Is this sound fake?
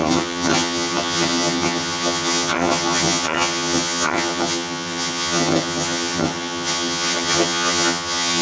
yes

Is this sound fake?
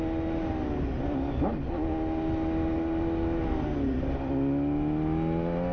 no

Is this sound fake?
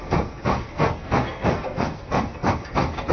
yes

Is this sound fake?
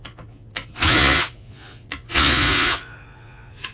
yes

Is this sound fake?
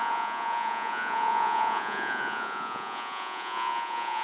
yes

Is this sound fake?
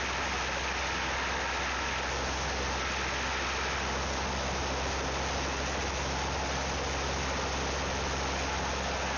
no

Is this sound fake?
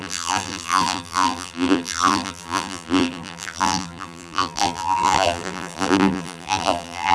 yes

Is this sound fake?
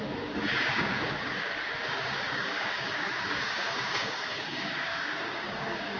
yes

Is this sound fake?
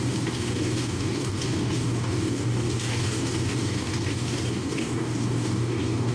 yes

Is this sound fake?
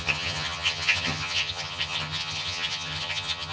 yes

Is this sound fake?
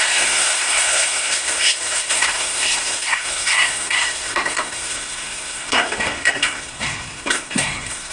yes